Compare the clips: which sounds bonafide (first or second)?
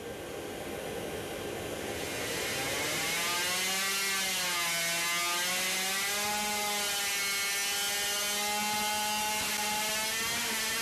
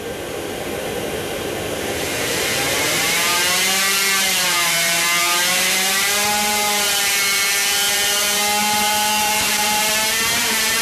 first